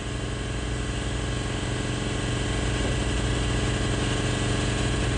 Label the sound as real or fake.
real